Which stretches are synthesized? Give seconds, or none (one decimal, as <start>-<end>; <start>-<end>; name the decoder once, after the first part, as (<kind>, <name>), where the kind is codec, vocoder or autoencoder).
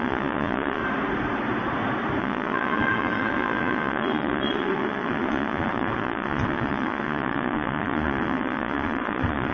0.0-0.8 (vocoder, Vocos); 2.2-9.5